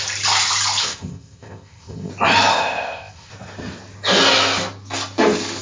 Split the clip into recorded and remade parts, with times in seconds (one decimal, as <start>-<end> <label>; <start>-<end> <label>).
0.0-0.8 recorded; 0.8-2.1 remade; 2.1-2.5 recorded; 2.5-3.3 remade; 3.3-5.6 recorded